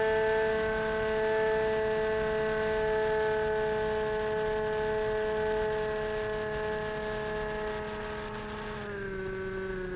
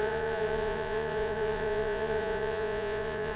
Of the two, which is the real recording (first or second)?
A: first